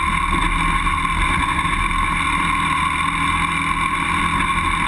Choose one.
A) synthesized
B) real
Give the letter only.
B